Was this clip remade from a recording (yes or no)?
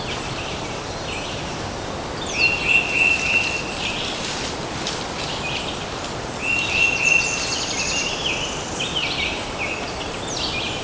no